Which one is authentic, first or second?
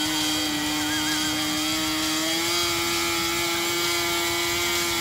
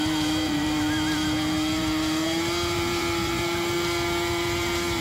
first